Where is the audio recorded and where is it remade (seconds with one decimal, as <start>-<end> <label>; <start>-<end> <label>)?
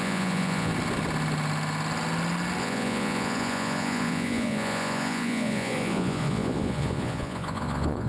0.0-0.7 remade; 0.7-2.6 recorded; 2.6-8.1 remade